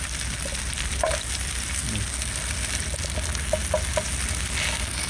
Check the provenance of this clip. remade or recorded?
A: recorded